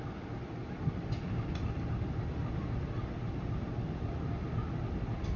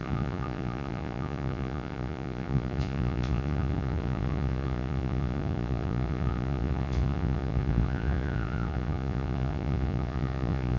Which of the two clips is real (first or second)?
first